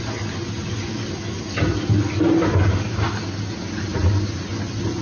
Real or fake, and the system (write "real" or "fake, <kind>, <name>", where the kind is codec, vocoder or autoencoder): real